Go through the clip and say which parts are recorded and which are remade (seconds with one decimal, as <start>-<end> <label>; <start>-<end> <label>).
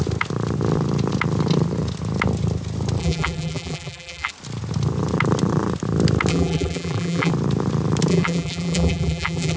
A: 0.0-3.0 recorded; 3.0-4.3 remade; 4.3-6.3 recorded; 6.3-7.3 remade; 7.3-8.1 recorded; 8.1-9.6 remade